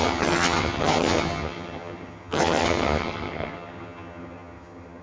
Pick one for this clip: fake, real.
fake